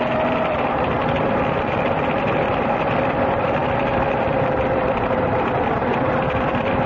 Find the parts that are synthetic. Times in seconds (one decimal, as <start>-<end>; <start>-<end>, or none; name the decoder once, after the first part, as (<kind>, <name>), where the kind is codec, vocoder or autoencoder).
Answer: 0.0-3.6 (vocoder, BigVGAN v2); 4.3-6.9